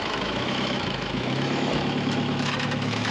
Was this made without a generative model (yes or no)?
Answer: no